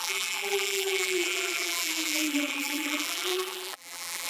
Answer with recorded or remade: remade